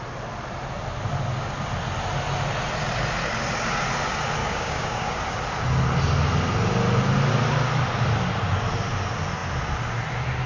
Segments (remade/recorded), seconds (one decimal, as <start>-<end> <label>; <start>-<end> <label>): 0.0-4.4 recorded; 4.4-5.2 remade; 5.2-10.5 recorded